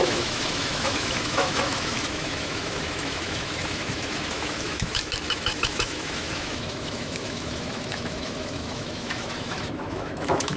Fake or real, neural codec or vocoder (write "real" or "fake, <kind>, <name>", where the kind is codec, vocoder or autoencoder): fake, autoencoder, DAC-VAE